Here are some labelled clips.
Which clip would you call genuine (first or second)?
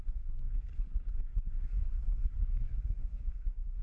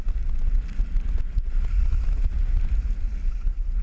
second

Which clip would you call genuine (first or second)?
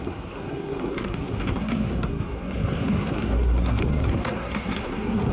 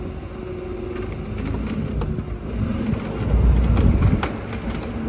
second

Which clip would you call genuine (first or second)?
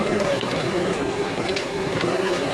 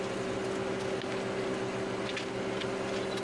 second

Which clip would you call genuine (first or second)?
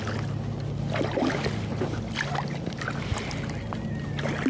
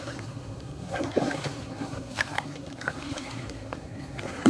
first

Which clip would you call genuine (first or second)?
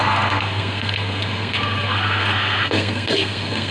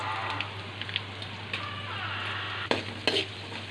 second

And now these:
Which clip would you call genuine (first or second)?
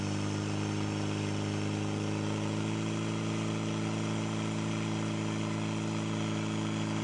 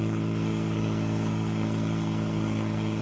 first